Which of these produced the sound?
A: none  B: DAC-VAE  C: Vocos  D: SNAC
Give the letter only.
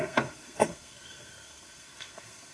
D